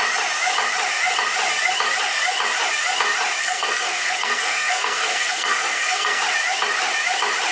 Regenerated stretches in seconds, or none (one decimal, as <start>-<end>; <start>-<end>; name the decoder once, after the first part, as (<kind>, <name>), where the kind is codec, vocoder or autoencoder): 3.4-6.2 (codec, SNAC)